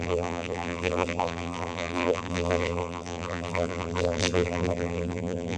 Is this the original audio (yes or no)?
no